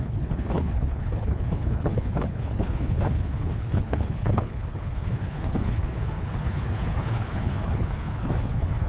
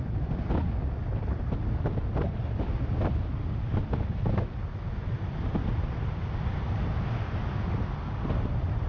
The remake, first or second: first